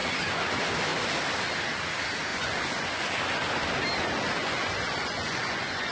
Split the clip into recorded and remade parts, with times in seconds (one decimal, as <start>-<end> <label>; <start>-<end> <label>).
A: 0.0-0.5 remade; 0.5-2.3 recorded; 2.3-3.1 remade; 3.1-4.4 recorded; 4.4-5.9 remade